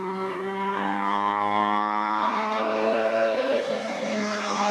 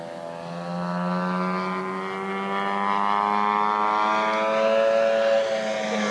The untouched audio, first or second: second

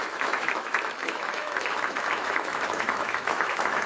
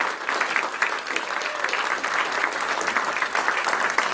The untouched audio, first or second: second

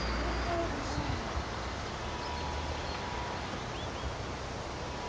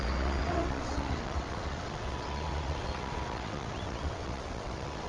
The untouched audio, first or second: first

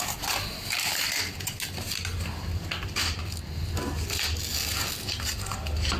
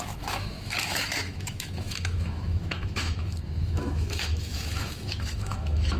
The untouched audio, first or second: first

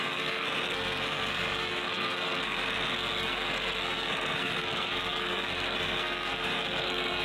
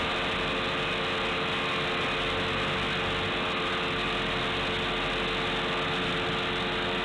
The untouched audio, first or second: second